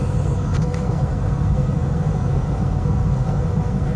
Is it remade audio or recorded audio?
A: remade